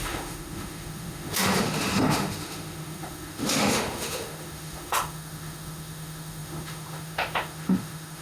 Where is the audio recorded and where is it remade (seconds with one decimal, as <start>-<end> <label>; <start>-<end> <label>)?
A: 0.0-8.2 remade